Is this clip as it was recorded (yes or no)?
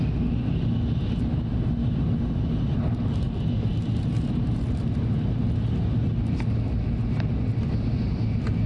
yes